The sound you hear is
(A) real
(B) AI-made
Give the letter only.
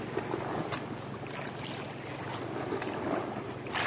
A